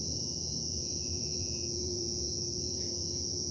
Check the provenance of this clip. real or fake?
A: fake